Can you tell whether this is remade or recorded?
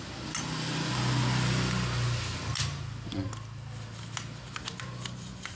recorded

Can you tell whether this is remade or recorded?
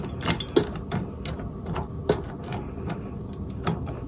recorded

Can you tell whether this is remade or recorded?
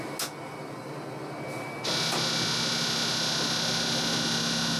recorded